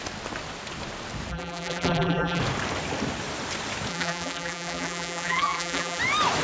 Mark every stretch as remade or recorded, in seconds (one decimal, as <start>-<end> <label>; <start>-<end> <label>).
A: 0.0-1.3 recorded; 1.3-2.4 remade; 2.4-3.9 recorded; 3.9-6.0 remade; 6.0-6.4 recorded